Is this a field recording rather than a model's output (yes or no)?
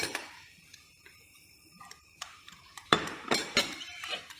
no